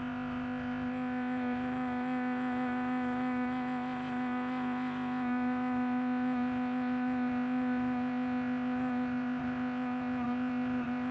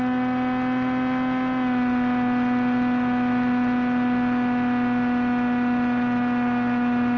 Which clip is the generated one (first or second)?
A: first